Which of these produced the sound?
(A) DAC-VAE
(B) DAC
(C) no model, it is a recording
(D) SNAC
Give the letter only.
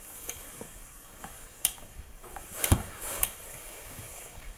B